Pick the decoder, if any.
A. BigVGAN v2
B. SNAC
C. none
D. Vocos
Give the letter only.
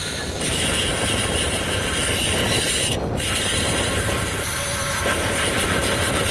A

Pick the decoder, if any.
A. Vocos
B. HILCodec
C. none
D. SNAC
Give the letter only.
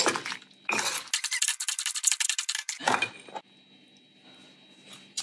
C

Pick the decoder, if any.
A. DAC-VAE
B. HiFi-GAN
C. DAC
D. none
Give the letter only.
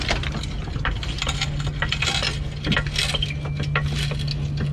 D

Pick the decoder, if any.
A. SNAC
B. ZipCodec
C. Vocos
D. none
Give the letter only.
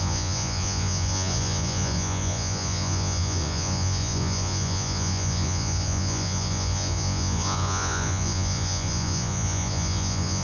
C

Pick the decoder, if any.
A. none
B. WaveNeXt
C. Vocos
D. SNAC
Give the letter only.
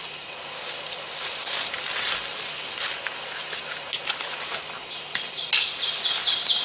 A